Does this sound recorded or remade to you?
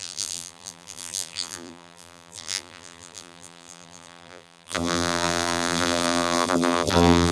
remade